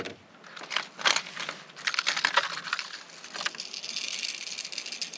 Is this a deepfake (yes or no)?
no